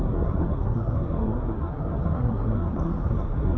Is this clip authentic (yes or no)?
no